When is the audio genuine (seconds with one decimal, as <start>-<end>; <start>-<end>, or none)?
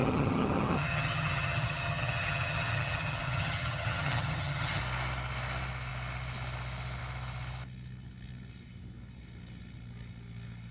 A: 4.8-10.7